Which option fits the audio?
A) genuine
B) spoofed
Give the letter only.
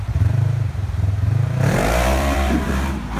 B